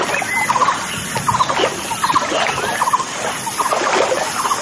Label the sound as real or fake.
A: real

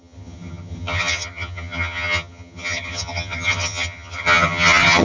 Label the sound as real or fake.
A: fake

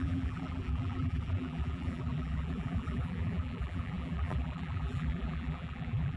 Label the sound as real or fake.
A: fake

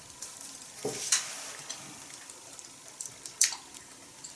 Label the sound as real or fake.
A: fake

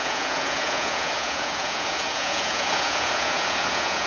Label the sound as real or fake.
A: fake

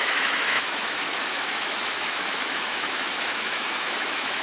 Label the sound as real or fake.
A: fake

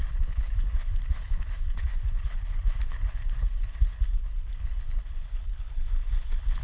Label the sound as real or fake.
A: fake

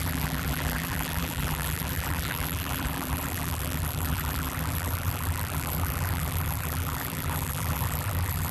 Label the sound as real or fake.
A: fake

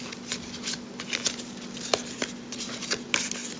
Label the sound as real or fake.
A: real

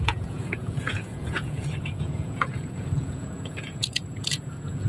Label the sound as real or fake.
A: fake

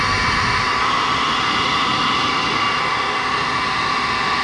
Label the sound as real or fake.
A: real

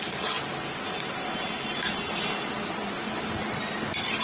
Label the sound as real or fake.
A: real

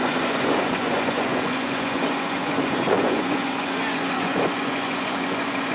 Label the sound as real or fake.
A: fake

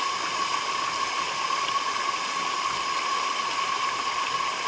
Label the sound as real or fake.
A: real